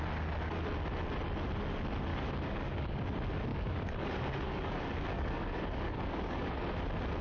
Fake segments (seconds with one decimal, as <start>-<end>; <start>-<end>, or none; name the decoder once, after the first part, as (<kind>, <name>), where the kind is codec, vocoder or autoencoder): 2.1-3.0 (codec, DAC); 3.5-6.5